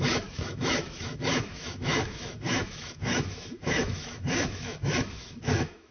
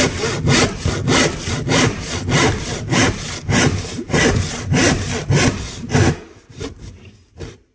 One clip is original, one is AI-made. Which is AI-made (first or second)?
first